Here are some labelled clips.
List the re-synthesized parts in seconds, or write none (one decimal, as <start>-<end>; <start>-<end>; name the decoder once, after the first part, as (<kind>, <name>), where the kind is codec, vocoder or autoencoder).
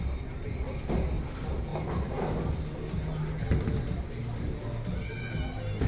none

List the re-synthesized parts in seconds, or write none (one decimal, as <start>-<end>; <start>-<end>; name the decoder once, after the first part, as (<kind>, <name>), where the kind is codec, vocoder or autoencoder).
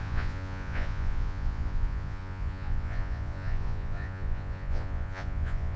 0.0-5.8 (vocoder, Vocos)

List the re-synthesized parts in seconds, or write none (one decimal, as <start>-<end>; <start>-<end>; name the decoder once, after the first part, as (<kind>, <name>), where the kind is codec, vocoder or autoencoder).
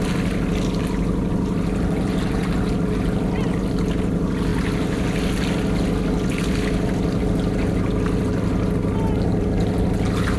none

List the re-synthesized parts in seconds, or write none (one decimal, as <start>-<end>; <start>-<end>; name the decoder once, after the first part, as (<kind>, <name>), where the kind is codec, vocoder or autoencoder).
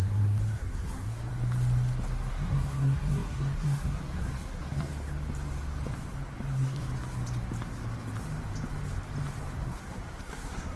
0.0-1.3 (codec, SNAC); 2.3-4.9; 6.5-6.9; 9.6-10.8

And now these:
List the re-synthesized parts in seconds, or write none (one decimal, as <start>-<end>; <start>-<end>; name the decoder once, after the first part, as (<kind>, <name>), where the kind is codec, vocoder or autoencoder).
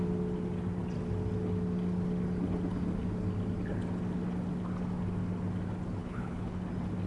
6.0-6.6 (codec, HILCodec)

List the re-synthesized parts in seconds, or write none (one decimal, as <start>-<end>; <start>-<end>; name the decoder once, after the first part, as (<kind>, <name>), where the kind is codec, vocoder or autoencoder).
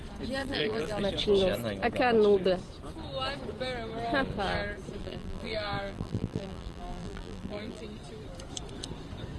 0.4-1.0 (vocoder, BigVGAN v2); 5.0-7.8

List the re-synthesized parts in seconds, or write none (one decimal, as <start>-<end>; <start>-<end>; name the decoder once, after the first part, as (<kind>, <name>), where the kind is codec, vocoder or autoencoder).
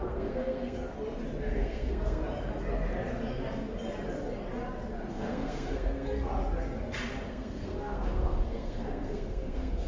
0.0-0.8 (codec, SNAC); 1.4-2.2; 5.1-6.3; 7.3-9.9